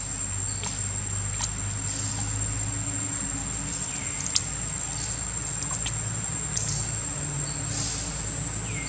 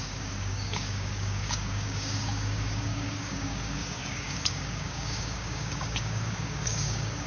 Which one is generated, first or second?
second